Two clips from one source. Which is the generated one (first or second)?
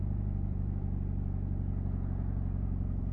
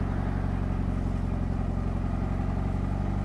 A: first